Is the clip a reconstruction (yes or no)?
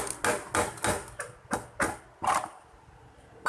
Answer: no